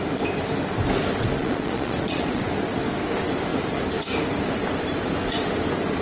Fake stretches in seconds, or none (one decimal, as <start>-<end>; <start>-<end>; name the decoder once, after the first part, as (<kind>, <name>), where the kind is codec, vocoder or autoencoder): 1.4-2.4 (vocoder, Vocos)